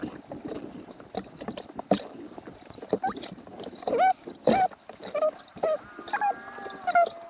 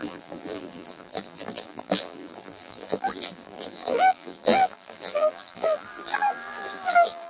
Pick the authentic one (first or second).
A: first